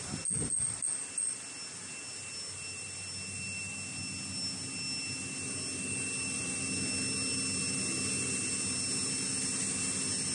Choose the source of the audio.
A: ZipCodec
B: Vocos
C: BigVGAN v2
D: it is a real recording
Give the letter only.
D